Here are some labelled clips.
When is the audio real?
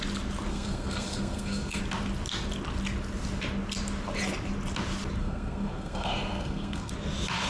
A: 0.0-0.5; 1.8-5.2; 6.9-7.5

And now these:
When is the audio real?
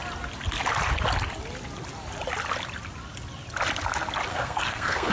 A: 0.0-4.3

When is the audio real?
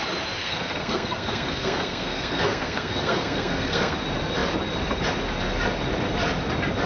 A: 0.0-0.4; 4.0-6.9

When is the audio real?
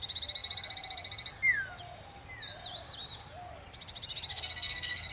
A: 0.0-4.3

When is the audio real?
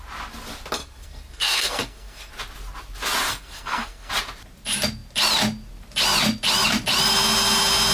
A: 0.0-0.8; 2.3-3.3; 4.1-7.9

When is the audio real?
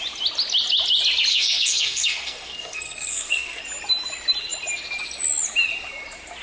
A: 0.0-1.3; 3.6-6.4